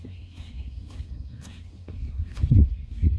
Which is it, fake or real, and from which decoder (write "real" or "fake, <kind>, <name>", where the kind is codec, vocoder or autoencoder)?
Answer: fake, codec, SNAC